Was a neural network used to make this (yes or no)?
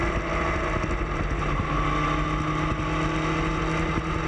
no